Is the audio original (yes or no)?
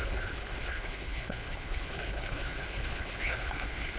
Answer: no